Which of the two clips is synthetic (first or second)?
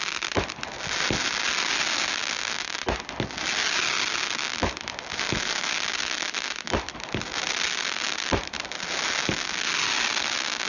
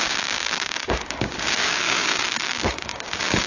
second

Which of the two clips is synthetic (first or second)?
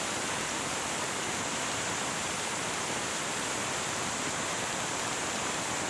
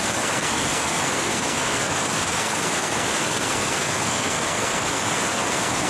second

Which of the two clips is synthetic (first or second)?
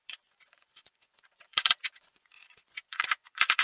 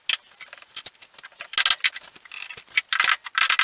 first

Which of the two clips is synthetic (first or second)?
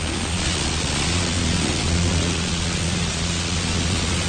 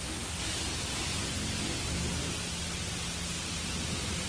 first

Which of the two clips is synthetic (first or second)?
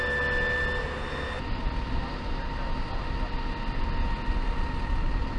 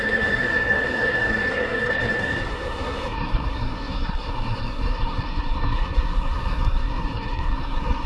second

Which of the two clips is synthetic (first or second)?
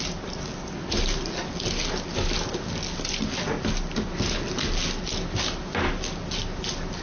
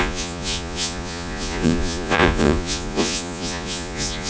second